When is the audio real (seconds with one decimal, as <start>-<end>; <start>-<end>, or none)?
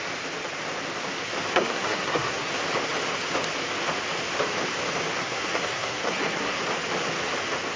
0.0-1.5; 2.5-5.2; 6.6-7.8